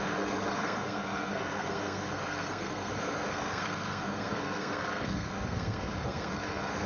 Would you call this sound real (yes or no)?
no